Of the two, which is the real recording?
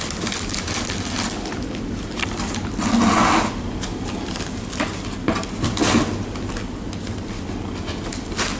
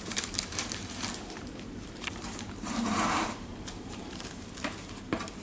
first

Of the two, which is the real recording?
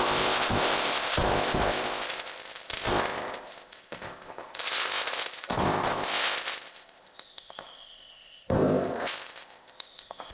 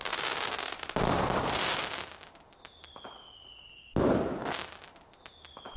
second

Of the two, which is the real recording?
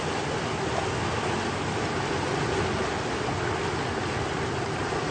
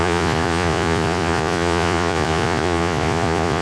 first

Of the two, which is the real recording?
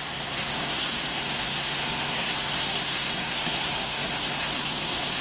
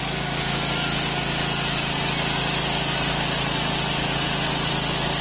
second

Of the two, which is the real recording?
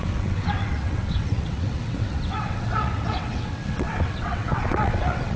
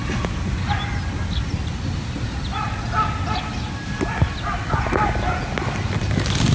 second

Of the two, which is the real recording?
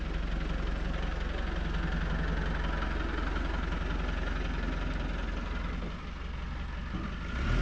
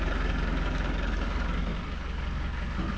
first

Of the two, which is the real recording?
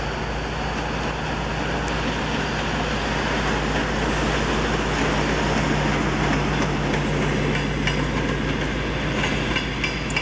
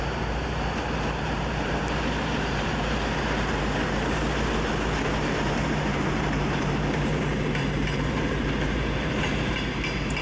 first